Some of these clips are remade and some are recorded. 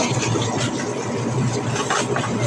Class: recorded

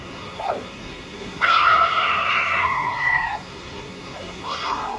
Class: remade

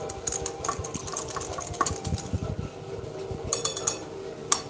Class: recorded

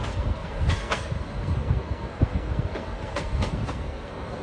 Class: remade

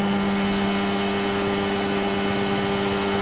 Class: recorded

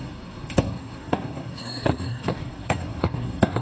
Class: remade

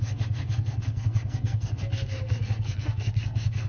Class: remade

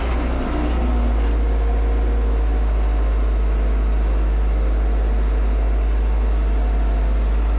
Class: recorded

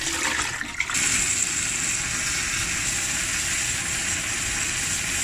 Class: recorded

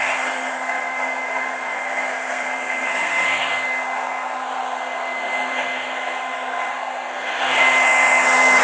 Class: remade